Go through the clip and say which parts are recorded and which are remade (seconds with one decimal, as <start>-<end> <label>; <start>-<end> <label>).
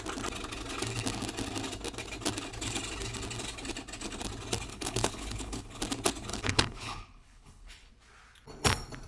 0.0-4.7 recorded; 4.7-5.8 remade; 5.8-6.3 recorded; 6.3-7.9 remade; 7.9-9.1 recorded